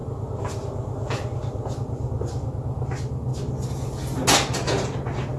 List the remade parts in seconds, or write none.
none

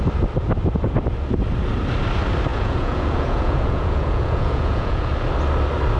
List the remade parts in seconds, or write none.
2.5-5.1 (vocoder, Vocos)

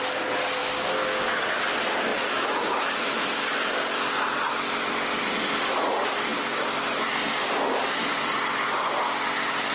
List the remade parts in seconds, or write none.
0.6-1.6 (autoencoder, DAC-VAE)

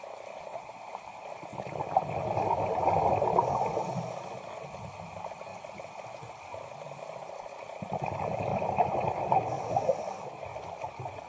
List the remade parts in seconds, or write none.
5.5-6.3 (vocoder, BigVGAN v2); 8.5-10.3